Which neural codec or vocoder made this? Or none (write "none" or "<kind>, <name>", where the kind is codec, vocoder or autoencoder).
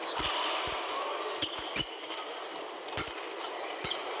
none